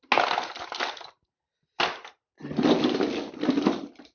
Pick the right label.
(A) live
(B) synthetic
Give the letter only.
A